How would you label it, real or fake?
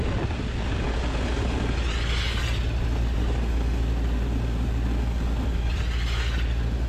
real